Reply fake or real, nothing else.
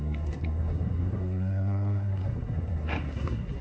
fake